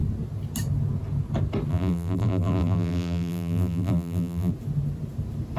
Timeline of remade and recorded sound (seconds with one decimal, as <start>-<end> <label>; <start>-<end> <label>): 0.0-1.7 recorded; 1.7-4.5 remade; 4.5-5.6 recorded